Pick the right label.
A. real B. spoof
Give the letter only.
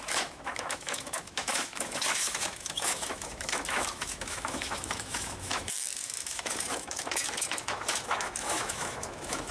B